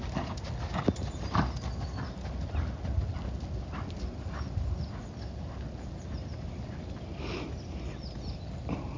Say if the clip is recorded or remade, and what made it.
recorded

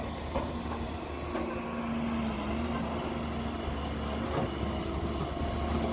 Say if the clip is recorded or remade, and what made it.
recorded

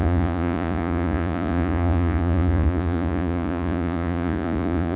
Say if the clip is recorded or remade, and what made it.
remade, vocoder, Vocos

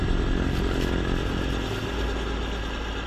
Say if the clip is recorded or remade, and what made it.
recorded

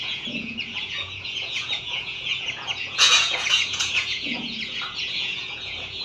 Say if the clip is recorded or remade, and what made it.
remade, vocoder, Vocos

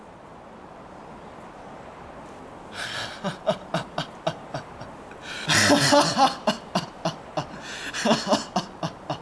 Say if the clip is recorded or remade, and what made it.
recorded